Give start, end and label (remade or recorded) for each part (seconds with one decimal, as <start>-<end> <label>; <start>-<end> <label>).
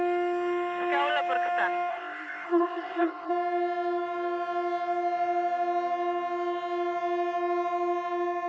0.0-1.9 recorded; 1.9-3.3 remade; 3.3-8.5 recorded